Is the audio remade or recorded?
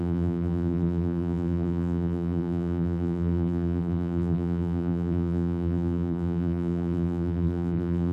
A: remade